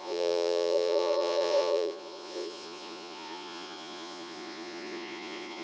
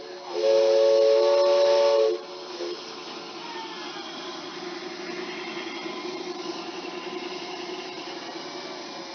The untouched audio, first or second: second